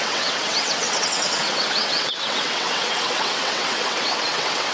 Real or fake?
fake